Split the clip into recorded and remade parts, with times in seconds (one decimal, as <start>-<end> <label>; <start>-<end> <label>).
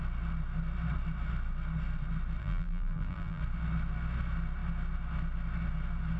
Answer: 0.0-2.4 recorded; 2.4-3.4 remade; 3.4-6.2 recorded